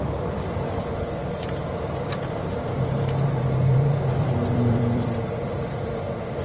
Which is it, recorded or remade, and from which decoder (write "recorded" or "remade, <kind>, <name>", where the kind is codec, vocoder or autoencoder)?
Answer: remade, vocoder, BigVGAN v2